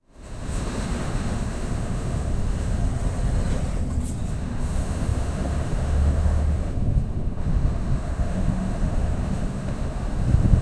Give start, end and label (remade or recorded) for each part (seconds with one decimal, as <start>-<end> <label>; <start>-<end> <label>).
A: 0.0-2.8 remade; 2.8-4.3 recorded; 4.3-10.6 remade